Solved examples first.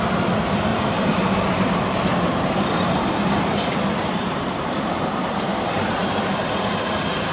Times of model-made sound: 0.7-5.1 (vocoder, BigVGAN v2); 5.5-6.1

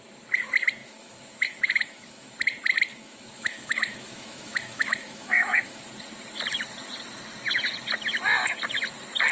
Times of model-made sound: 0.8-2.3 (autoencoder, DAC-VAE); 2.9-5.9